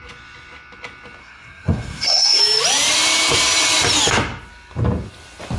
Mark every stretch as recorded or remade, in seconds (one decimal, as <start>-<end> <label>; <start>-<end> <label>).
0.0-1.2 recorded; 1.2-2.4 remade; 2.4-5.6 recorded